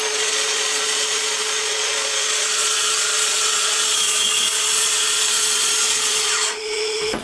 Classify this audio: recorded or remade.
remade